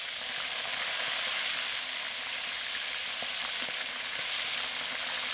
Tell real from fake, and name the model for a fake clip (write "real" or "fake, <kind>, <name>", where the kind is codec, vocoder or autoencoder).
real